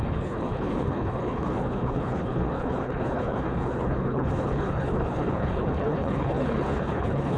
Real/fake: fake